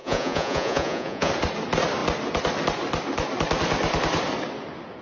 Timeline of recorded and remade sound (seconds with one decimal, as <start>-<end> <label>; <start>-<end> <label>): 0.0-1.3 remade; 1.3-5.0 recorded